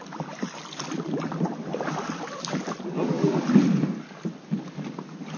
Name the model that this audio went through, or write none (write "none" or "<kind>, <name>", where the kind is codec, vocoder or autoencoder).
none